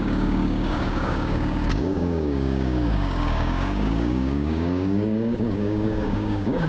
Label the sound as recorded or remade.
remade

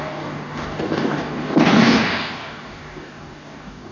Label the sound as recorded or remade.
remade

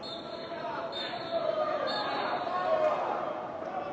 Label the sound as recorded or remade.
recorded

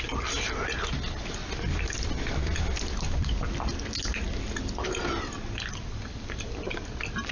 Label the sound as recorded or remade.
recorded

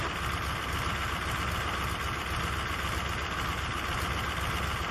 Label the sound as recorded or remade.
recorded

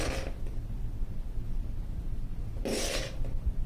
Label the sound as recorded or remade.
recorded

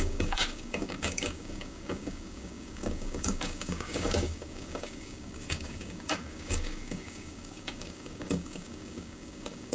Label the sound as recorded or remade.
remade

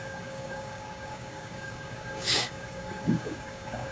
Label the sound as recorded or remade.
remade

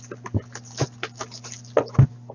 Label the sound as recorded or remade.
recorded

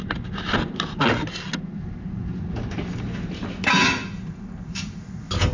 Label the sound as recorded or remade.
recorded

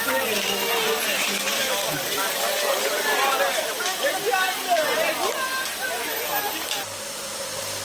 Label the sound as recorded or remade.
recorded